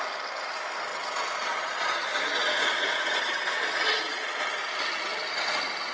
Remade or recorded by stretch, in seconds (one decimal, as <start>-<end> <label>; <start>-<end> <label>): 0.0-0.9 recorded; 0.9-4.4 remade; 4.4-5.9 recorded